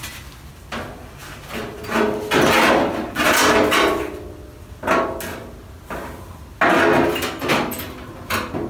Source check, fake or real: real